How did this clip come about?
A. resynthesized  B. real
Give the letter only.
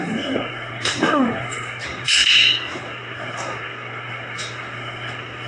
A